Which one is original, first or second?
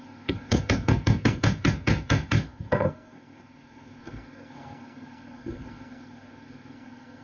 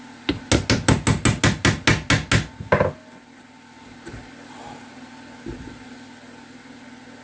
second